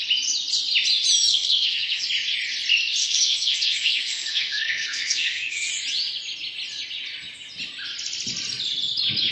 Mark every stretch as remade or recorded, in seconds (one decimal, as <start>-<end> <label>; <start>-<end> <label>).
0.0-1.3 recorded; 1.3-2.0 remade; 2.0-3.0 recorded; 3.0-5.7 remade; 5.7-9.3 recorded